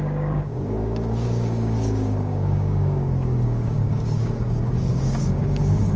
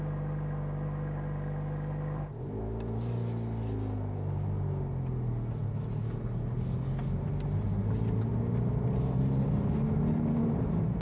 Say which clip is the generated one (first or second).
first